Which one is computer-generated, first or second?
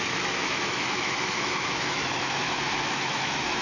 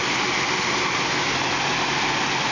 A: first